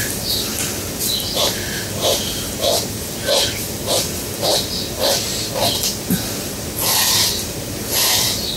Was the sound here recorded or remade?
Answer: recorded